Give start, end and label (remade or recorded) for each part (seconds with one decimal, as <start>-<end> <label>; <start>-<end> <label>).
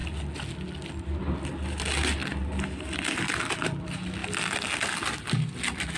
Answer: 0.0-6.0 recorded